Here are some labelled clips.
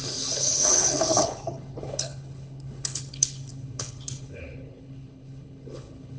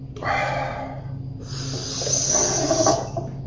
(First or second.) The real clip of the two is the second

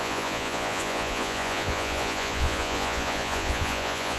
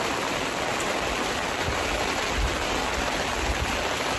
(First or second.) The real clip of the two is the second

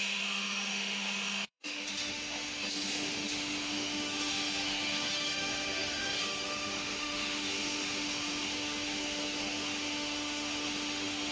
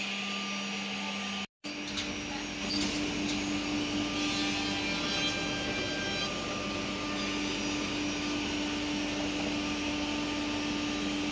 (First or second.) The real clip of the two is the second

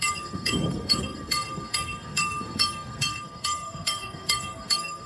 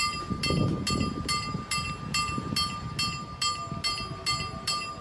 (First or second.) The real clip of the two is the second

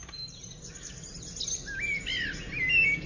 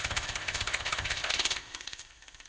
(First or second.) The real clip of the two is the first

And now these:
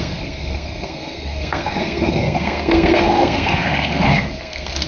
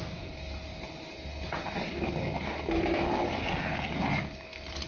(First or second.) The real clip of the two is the second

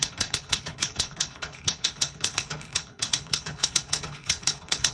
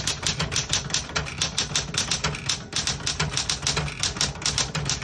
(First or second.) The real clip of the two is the second